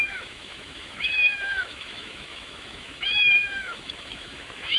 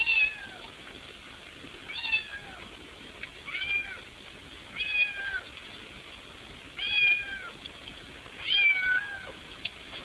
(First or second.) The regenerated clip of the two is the first